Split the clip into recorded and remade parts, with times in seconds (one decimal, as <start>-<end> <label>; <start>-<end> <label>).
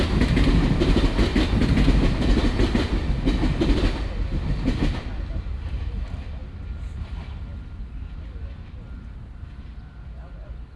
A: 0.0-10.8 recorded